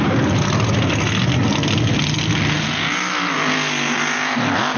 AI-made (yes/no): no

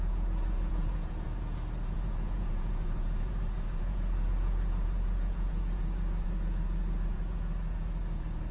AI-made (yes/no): yes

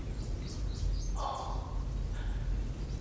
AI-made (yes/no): no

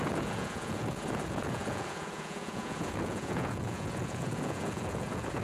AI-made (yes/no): yes